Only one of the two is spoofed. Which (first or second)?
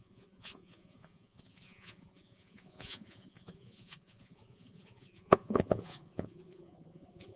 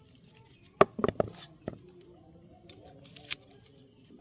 first